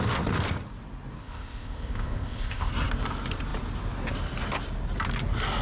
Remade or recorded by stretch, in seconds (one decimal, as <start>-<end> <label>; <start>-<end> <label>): 0.0-1.2 recorded; 1.2-2.7 remade; 2.7-5.6 recorded

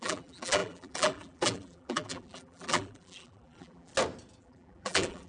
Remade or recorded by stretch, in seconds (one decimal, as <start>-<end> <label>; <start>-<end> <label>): 0.0-3.9 remade; 3.9-4.4 recorded; 4.4-5.3 remade

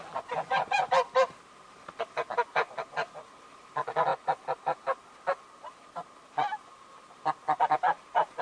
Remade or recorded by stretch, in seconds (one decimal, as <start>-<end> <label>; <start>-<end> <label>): 0.0-0.4 recorded; 0.4-0.9 remade; 0.9-8.4 recorded

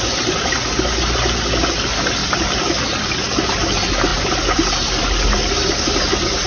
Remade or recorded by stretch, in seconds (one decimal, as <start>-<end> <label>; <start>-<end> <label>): 0.0-6.5 recorded

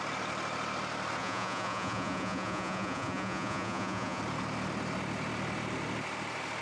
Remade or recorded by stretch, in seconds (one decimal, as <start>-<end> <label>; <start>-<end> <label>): 0.0-1.2 recorded; 1.2-4.2 remade; 4.2-6.6 recorded

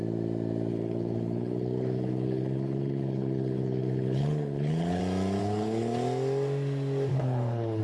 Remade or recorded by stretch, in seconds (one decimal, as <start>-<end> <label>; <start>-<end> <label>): 0.0-0.7 recorded; 0.7-5.0 remade; 5.0-5.4 recorded; 5.4-5.9 remade; 5.9-7.1 recorded; 7.1-7.8 remade